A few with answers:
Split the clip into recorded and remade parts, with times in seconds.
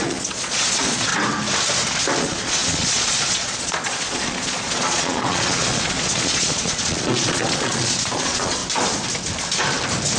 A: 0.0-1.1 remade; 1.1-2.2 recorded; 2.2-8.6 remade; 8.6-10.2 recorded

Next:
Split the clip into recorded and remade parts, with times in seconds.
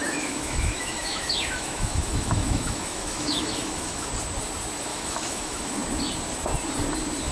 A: 0.0-4.1 remade; 4.1-4.9 recorded; 4.9-5.8 remade; 5.8-7.3 recorded